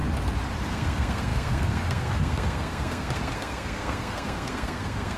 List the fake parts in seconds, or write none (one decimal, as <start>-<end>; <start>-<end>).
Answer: 0.7-5.2